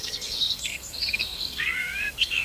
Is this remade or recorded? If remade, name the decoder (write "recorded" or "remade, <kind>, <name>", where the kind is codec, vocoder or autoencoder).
remade, codec, SNAC